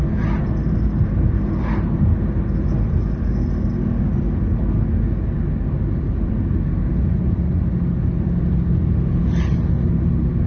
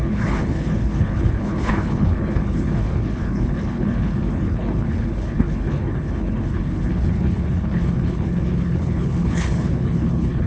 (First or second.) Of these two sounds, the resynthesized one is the second